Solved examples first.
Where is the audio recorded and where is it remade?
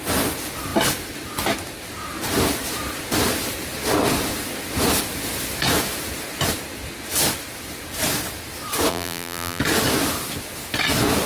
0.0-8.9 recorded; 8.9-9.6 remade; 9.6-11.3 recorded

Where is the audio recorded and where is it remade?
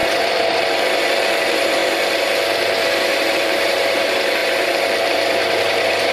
0.0-1.4 recorded; 1.4-1.8 remade; 1.8-3.2 recorded; 3.2-6.1 remade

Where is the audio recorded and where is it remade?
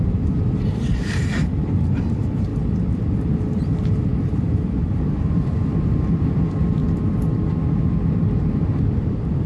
0.0-2.5 remade; 2.5-3.6 recorded; 3.6-6.8 remade; 6.8-7.7 recorded; 7.7-9.5 remade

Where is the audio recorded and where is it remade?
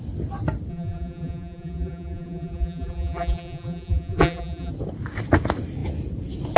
0.0-0.7 recorded; 0.7-4.7 remade; 4.7-6.6 recorded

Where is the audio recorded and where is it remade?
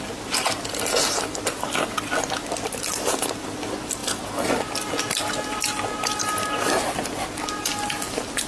0.0-8.5 recorded